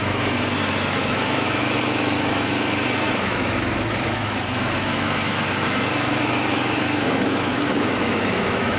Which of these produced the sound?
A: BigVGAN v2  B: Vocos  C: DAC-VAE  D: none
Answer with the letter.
C